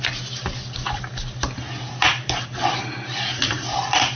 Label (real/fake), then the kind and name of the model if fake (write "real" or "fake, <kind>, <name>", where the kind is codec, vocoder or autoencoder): real